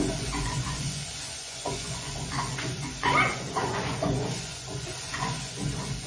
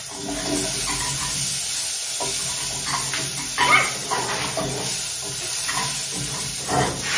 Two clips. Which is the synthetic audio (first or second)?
first